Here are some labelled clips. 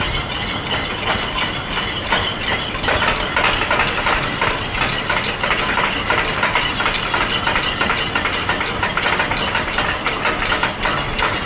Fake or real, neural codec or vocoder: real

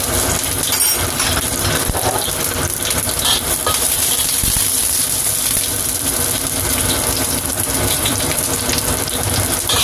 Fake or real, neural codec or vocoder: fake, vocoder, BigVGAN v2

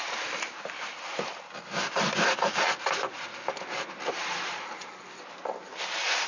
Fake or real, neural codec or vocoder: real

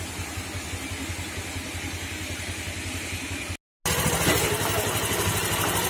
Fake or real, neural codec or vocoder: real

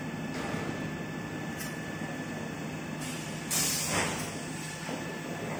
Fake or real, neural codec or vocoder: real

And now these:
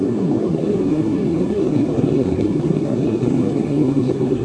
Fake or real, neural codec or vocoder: fake, codec, SNAC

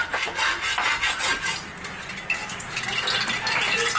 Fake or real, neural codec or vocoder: real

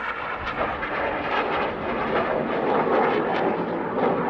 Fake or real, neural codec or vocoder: real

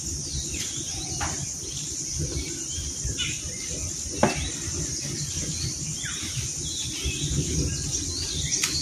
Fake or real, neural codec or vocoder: real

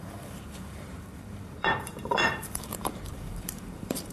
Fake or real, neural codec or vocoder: fake, vocoder, BigVGAN v2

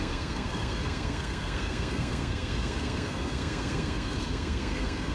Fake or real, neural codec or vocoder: fake, codec, SNAC